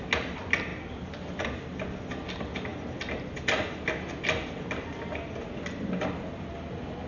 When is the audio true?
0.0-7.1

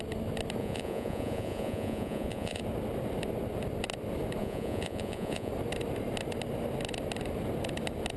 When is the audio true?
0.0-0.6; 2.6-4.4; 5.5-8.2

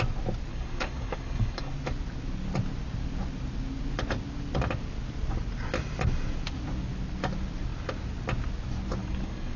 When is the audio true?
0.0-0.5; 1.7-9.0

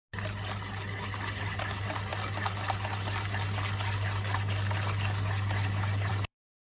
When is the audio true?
0.0-6.6

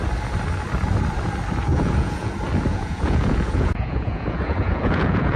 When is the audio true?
0.0-1.7; 2.3-2.7

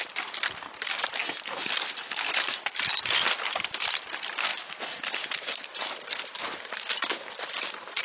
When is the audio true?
4.5-7.2

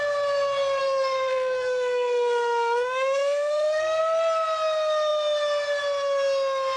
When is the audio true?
0.0-0.8; 4.0-6.8

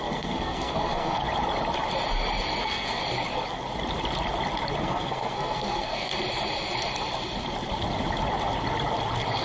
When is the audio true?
1.2-2.6; 3.0-4.8; 6.1-9.4